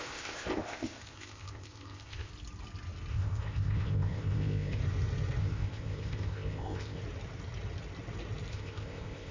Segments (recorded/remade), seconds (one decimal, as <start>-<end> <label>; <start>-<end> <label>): 0.0-2.3 remade; 2.3-3.1 recorded; 3.1-4.8 remade; 4.8-5.4 recorded; 5.4-7.0 remade; 7.0-8.5 recorded; 8.5-9.3 remade